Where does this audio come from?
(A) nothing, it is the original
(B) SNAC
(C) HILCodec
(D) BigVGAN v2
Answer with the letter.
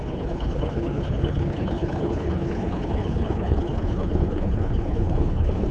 C